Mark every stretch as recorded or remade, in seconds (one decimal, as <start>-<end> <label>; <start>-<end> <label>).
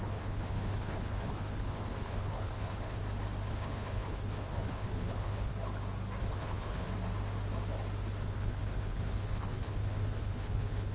0.0-3.0 remade; 3.0-3.5 recorded; 3.5-5.5 remade; 5.5-6.2 recorded; 6.2-6.9 remade; 6.9-8.2 recorded; 8.2-10.9 remade